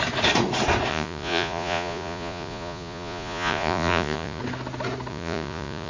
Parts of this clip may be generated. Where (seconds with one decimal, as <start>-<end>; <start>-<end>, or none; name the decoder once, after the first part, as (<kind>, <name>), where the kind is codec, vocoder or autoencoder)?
0.9-4.4 (vocoder, Vocos); 5.1-5.9